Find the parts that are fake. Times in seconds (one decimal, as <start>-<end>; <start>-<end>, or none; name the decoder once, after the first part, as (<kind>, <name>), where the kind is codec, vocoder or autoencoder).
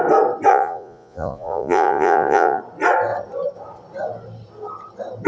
0.5-2.6 (vocoder, Vocos)